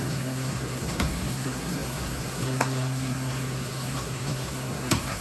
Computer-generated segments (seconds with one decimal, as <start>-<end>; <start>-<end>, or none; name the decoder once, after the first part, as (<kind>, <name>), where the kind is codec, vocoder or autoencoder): 0.0-5.2 (codec, SNAC)